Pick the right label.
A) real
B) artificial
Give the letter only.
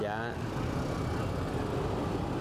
A